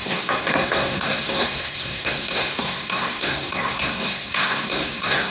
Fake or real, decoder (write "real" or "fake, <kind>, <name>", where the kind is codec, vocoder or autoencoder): fake, codec, SNAC